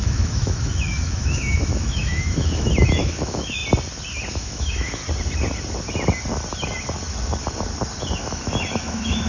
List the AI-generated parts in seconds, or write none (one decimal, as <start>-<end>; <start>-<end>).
0.0-3.6; 4.3-5.0; 8.2-9.3